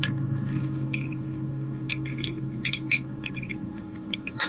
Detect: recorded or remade remade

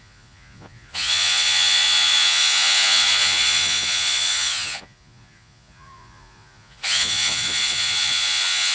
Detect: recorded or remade remade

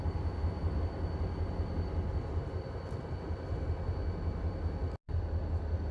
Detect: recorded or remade recorded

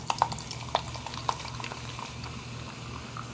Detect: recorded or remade recorded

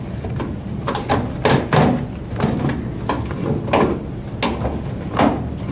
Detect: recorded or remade recorded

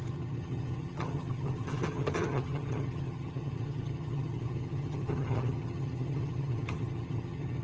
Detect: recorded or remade remade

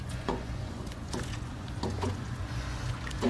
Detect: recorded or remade remade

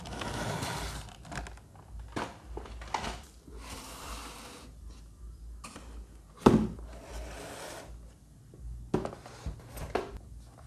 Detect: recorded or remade recorded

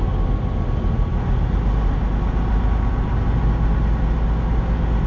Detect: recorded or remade recorded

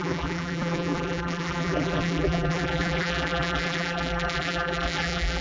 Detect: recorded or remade remade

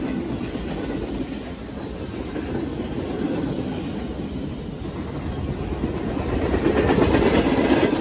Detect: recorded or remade recorded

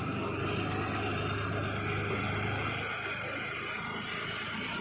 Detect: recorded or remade recorded